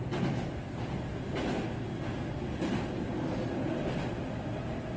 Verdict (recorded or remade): recorded